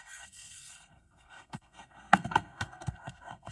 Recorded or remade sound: remade